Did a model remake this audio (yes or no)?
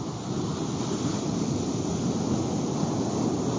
no